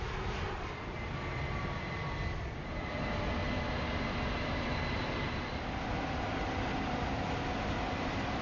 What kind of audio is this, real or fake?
real